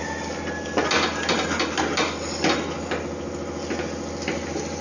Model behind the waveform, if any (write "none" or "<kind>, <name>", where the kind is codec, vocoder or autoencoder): none